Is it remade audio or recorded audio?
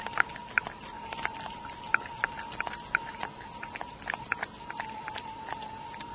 recorded